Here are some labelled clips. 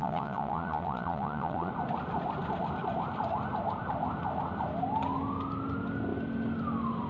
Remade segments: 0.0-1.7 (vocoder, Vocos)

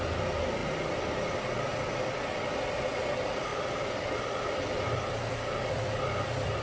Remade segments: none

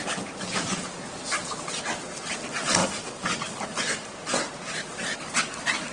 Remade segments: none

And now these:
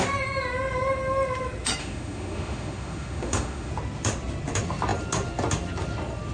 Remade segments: 1.8-3.7 (autoencoder, DAC-VAE)